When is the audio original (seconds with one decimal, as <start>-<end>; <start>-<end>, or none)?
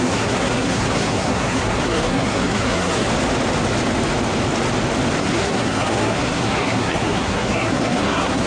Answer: 3.1-5.2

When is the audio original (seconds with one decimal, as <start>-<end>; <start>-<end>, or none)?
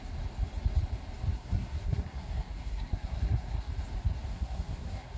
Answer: 0.0-1.3; 3.7-4.3